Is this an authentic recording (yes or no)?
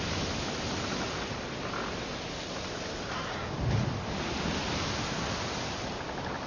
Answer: yes